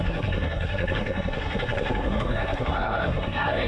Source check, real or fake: fake